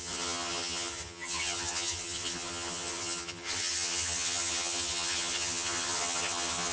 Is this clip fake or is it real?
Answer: fake